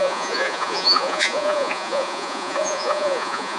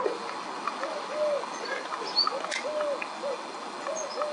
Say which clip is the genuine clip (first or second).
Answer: second